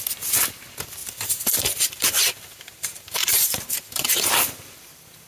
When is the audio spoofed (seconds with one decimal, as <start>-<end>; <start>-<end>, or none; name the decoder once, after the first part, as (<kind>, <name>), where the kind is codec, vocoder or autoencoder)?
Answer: 1.0-4.2 (vocoder, BigVGAN v2)